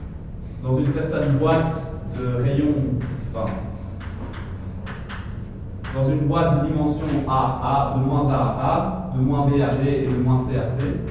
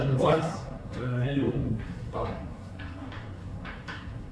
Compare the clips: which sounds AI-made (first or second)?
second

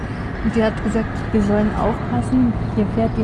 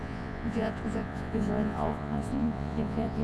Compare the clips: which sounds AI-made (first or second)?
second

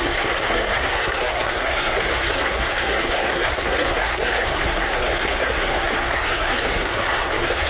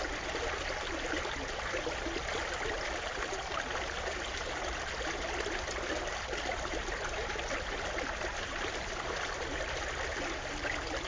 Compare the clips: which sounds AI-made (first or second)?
first